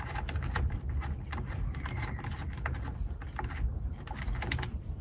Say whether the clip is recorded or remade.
recorded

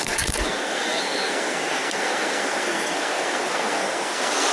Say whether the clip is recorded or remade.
remade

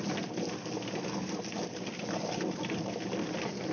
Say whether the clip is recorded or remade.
recorded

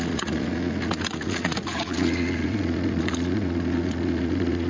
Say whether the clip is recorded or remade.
remade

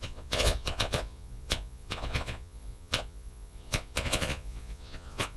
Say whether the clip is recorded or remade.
remade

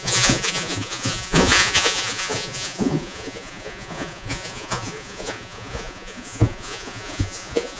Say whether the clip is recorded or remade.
remade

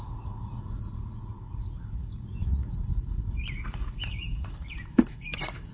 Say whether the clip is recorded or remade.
remade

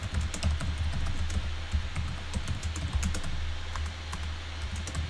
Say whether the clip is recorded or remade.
recorded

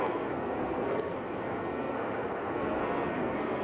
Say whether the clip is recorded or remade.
remade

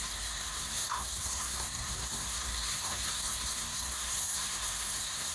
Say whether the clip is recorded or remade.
remade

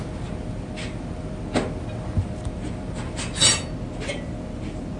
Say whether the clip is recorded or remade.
recorded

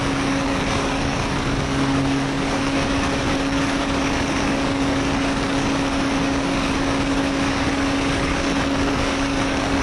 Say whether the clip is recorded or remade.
remade